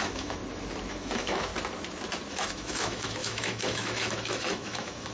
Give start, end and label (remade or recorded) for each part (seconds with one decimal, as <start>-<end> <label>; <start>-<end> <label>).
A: 0.0-0.4 remade; 0.4-0.9 recorded; 0.9-1.5 remade; 1.5-2.3 recorded; 2.3-5.1 remade

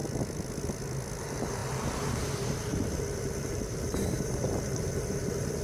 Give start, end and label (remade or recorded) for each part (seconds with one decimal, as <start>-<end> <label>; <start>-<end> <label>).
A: 0.0-1.2 recorded; 1.2-5.6 remade

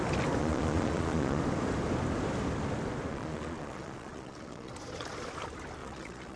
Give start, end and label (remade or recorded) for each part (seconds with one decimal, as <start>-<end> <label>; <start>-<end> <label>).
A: 0.0-0.4 recorded; 0.4-1.4 remade; 1.4-3.1 recorded; 3.1-4.7 remade; 4.7-5.8 recorded; 5.8-6.4 remade

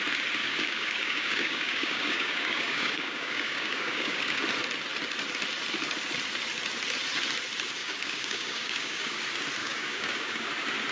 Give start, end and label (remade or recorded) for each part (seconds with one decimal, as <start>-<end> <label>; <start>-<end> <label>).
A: 0.0-0.4 recorded; 0.4-4.4 remade; 4.4-7.8 recorded; 7.8-9.2 remade; 9.2-9.6 recorded; 9.6-10.5 remade; 10.5-10.9 recorded